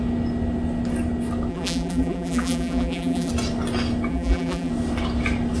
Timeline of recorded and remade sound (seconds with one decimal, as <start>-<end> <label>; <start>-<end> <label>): 0.0-1.5 recorded; 1.5-3.3 remade; 3.3-4.1 recorded; 4.1-4.7 remade; 4.7-5.6 recorded